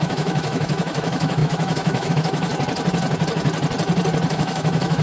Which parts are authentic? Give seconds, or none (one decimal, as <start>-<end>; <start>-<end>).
2.5-4.3